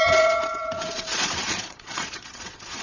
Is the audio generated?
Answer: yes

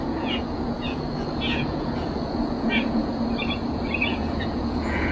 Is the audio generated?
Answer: yes